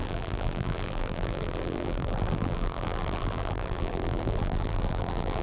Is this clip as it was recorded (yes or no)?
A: no